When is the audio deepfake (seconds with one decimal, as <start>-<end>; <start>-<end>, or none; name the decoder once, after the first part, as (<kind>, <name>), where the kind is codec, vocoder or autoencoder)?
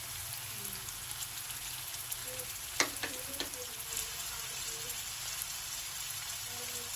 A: none